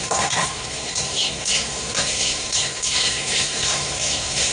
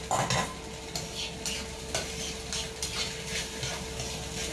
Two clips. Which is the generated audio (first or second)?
first